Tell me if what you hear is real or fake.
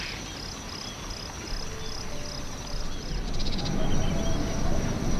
real